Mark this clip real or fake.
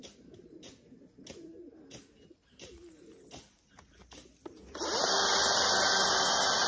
real